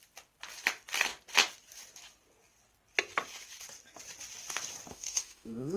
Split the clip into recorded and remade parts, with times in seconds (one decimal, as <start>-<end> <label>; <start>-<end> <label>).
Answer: 0.0-4.9 recorded; 4.9-5.8 remade